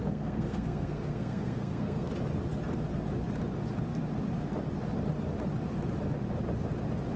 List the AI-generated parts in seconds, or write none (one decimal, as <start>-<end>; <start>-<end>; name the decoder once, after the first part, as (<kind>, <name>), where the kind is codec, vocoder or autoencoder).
0.0-2.1 (codec, SNAC)